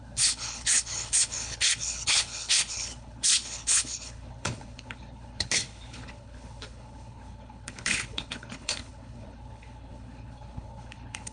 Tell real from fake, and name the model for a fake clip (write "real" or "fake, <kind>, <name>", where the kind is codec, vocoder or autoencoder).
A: fake, codec, HILCodec